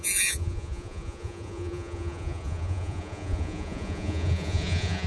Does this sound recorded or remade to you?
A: remade